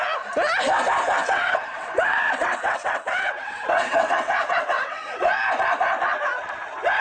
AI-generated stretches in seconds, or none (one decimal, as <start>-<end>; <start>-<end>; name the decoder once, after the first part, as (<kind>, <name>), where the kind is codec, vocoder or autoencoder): 1.2-5.4 (vocoder, WaveNeXt)